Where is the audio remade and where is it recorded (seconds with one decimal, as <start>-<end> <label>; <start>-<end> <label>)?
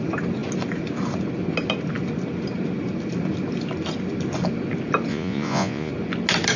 0.0-5.1 recorded; 5.1-5.9 remade; 5.9-6.6 recorded